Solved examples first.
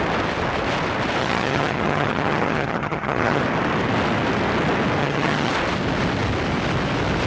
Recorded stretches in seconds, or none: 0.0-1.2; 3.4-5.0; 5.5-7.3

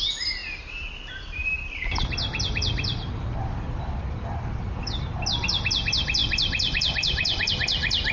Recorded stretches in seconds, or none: 0.0-0.4; 5.0-6.2; 7.5-8.1

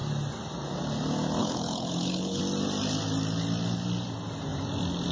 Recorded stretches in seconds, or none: 0.0-1.4; 2.4-5.1

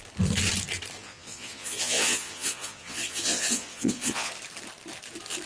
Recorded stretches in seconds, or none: 0.0-1.0; 4.3-5.5

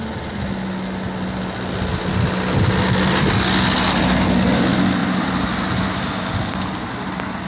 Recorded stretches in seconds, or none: 0.0-5.0; 5.5-7.5